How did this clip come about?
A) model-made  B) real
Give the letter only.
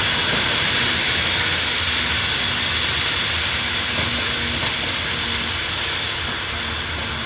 B